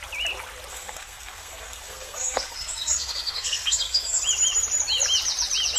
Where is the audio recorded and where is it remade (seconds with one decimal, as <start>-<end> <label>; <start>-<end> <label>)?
0.0-0.7 recorded; 0.7-4.2 remade; 4.2-5.8 recorded